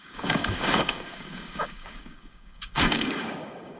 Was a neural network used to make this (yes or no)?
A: yes